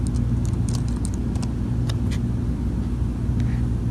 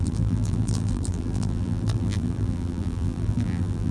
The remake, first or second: second